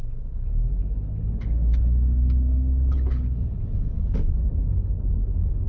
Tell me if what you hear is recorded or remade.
remade